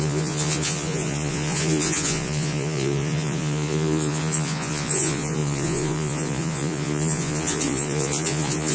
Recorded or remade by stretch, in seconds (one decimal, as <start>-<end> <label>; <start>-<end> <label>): 0.0-8.7 remade